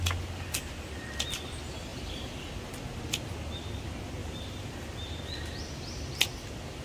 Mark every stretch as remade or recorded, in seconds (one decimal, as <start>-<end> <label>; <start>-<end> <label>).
0.0-1.9 recorded; 1.9-2.5 remade; 2.5-4.2 recorded; 4.2-4.7 remade; 4.7-6.8 recorded